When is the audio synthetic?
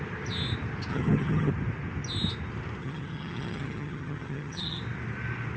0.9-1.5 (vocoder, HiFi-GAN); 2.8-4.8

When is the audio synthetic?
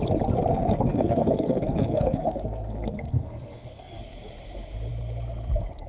0.5-4.0 (codec, SNAC)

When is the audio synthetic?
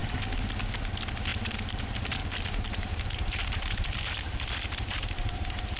0.0-0.5 (vocoder, BigVGAN v2); 1.3-1.8; 2.2-5.8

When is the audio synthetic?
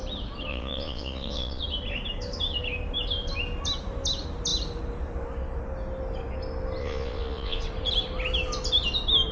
0.5-1.6 (vocoder, Vocos); 6.8-7.6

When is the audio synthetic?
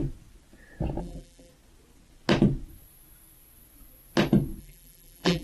1.0-1.5 (vocoder, BigVGAN v2); 4.6-5.4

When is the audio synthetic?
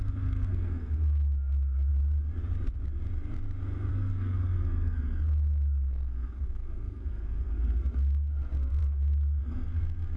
0.0-1.9 (codec, SNAC); 3.9-10.2